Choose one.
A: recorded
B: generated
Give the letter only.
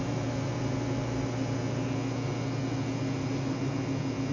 A